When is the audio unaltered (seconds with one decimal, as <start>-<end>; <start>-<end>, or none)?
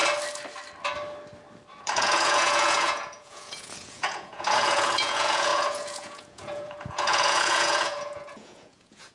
0.0-1.8